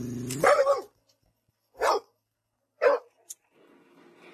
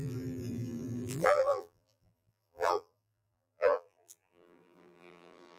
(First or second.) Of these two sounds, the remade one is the second